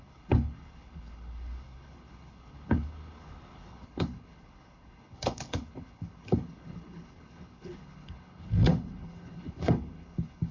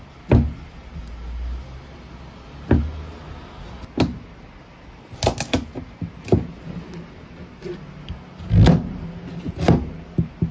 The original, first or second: second